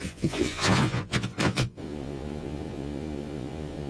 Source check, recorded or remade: remade